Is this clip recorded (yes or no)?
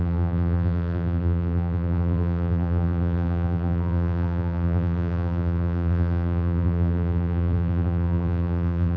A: no